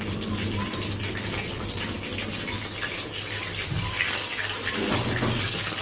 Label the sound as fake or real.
real